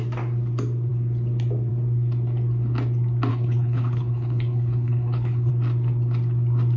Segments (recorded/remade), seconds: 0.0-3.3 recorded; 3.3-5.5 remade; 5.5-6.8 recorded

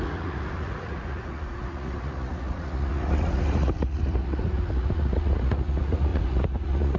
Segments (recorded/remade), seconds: 0.0-7.0 remade

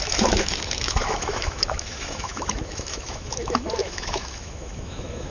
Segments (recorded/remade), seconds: 0.0-5.3 remade